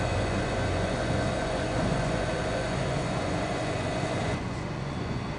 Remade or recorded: remade